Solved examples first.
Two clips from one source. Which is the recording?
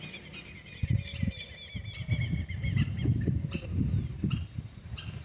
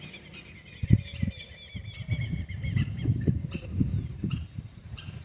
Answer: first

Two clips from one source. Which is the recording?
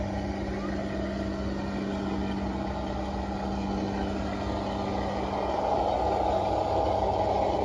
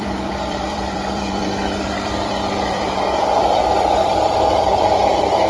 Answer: first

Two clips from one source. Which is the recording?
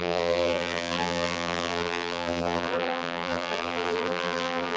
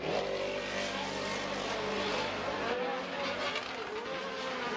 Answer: second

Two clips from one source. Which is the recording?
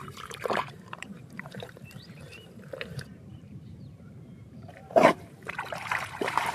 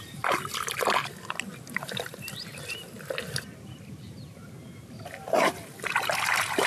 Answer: second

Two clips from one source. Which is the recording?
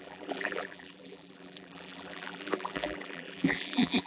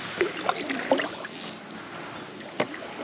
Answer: second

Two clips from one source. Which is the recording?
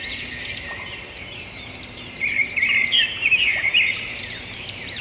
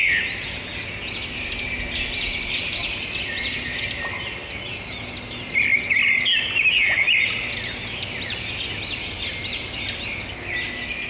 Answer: second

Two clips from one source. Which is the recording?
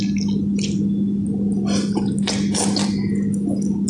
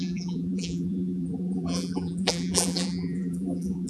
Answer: first